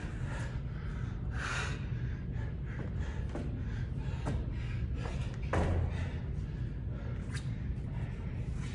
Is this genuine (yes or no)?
yes